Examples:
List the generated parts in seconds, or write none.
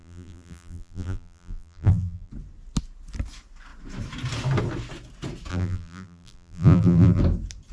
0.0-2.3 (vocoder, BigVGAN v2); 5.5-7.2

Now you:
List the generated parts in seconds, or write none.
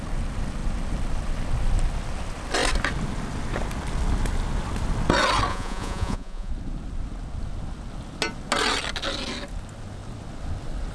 5.5-6.5 (vocoder, Vocos)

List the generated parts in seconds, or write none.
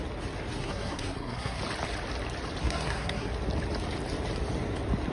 0.6-1.6 (codec, SNAC); 2.6-3.3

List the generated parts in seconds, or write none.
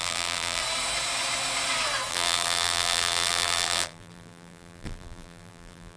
0.0-0.6 (vocoder, BigVGAN v2); 2.1-6.0